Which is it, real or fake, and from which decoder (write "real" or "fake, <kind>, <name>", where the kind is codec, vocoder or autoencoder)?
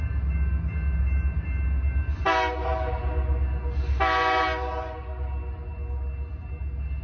real